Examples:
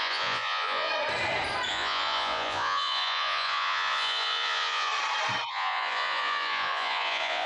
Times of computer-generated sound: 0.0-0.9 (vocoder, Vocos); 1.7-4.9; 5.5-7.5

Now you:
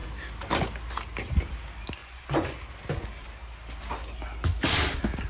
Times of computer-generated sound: 2.0-2.6 (vocoder, Vocos)